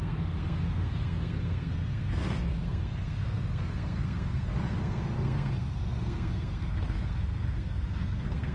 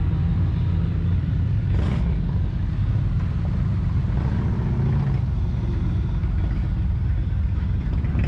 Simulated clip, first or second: first